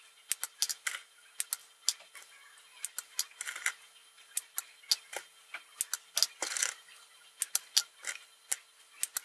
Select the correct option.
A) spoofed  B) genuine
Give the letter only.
B